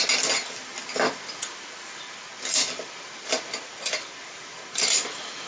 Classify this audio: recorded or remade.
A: recorded